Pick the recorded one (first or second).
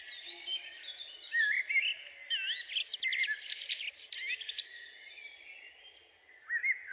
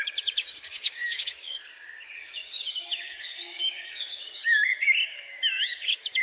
first